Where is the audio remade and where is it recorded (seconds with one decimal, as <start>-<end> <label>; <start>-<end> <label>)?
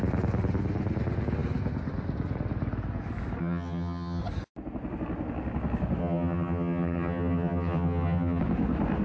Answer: 0.0-3.4 recorded; 3.4-4.2 remade; 4.2-6.0 recorded; 6.0-8.4 remade; 8.4-9.0 recorded